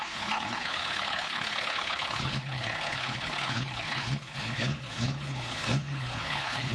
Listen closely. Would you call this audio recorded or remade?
remade